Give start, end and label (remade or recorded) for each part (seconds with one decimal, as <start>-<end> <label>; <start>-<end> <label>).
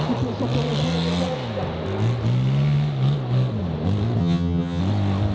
0.0-4.2 recorded; 4.2-4.8 remade; 4.8-5.3 recorded